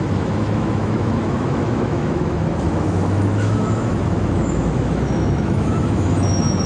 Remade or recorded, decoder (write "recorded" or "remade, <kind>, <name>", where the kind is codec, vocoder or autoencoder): remade, autoencoder, DAC-VAE